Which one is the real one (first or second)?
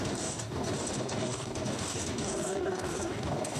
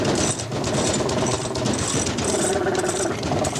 second